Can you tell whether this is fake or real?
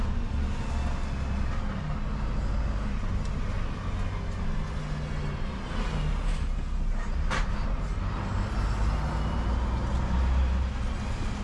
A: real